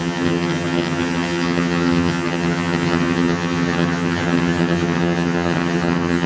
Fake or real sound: fake